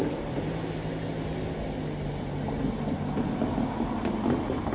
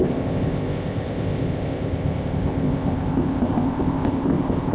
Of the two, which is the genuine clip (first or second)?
first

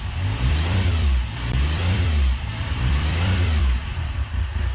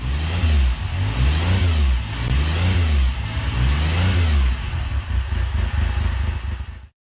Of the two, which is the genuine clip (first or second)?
second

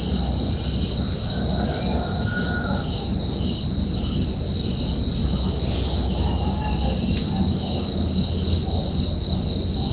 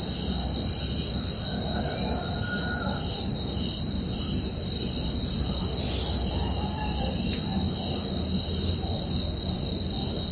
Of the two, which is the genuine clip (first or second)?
first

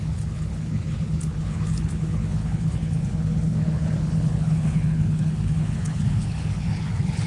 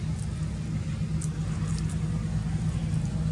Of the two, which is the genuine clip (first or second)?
second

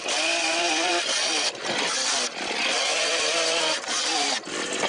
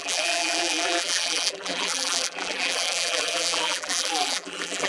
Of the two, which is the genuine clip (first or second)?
first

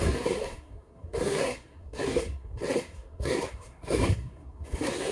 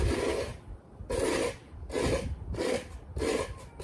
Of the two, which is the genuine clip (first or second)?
second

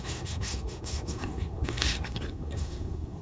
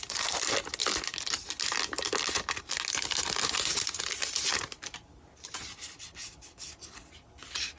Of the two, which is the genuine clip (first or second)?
second